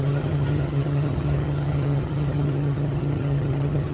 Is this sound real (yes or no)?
no